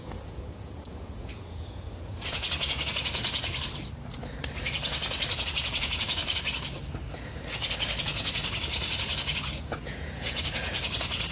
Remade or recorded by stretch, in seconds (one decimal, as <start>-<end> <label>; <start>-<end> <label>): 0.0-3.5 remade; 3.5-5.4 recorded; 5.4-6.2 remade; 6.2-8.0 recorded; 8.0-11.3 remade